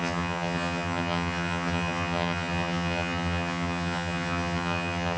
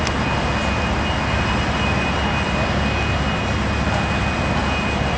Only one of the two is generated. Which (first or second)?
first